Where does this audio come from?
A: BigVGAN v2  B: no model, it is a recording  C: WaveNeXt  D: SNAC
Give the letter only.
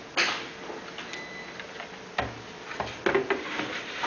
B